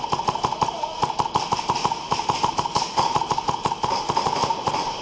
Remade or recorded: recorded